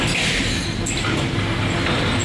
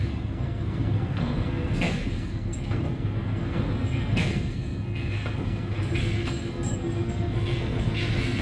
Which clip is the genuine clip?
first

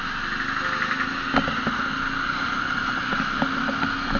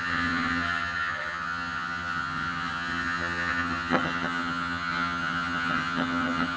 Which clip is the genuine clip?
first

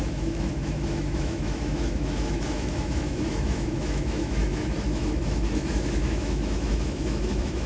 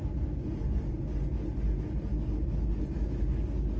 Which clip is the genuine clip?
second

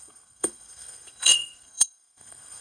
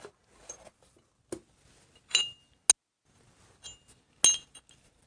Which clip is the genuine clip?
second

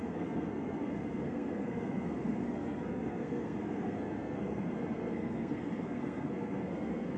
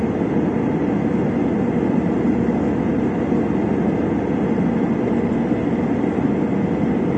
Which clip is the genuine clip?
second